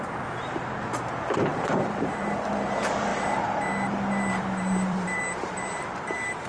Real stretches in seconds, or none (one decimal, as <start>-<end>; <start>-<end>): none